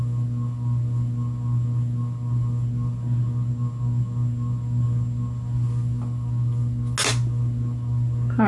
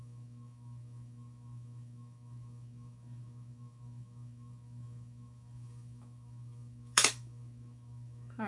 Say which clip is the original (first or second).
first